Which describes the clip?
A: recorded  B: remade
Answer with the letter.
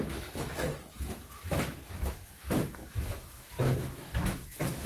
B